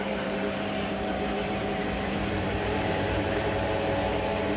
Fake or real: fake